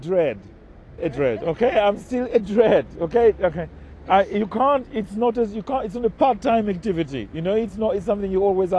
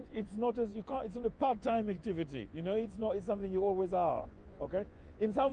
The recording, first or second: first